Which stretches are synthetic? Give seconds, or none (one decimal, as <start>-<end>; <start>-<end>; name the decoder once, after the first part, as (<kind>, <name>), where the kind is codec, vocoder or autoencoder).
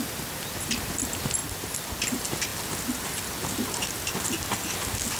none